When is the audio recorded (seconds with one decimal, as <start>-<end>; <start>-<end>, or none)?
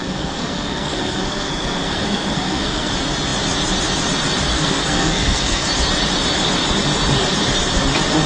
2.9-4.5; 5.7-8.3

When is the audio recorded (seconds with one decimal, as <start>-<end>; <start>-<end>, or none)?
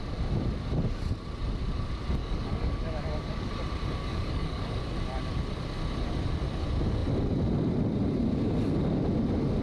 0.0-2.2; 3.5-4.0; 4.8-9.6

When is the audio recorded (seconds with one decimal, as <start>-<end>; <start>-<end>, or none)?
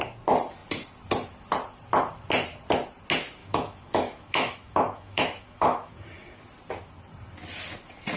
0.0-3.4; 5.9-8.2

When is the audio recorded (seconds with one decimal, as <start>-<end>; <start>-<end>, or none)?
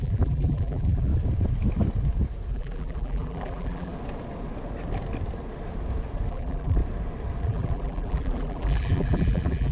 1.1-2.5; 3.9-6.3; 6.8-7.4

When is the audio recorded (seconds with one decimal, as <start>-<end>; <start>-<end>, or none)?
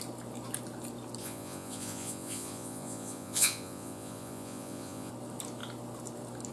0.0-1.2; 5.1-6.5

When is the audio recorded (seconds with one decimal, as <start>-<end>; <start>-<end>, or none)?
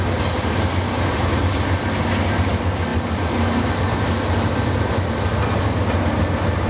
0.0-6.7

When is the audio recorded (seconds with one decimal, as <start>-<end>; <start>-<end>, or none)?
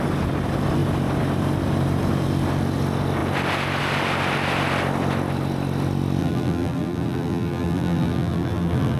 0.0-6.2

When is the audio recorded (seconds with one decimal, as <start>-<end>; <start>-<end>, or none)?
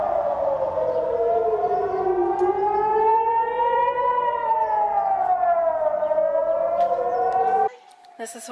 0.0-3.1; 4.5-8.5